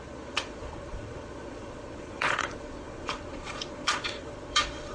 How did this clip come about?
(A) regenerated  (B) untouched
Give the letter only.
A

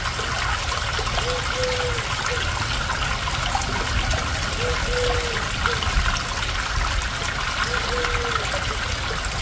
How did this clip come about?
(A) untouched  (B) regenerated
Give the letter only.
A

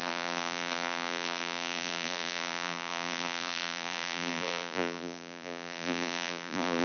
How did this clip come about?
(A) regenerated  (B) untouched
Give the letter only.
A